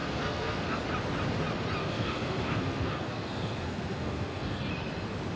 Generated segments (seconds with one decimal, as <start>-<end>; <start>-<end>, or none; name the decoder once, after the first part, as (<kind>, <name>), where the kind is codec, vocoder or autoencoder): 0.0-0.8 (codec, SNAC); 1.8-4.7